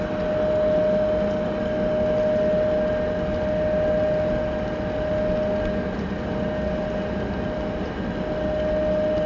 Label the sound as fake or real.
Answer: real